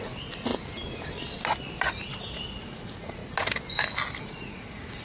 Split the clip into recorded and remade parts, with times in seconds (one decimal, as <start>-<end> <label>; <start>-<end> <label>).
0.0-0.5 remade; 0.5-2.6 recorded; 2.6-3.2 remade; 3.2-4.2 recorded; 4.2-5.0 remade